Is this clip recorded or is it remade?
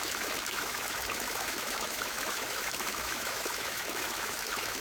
remade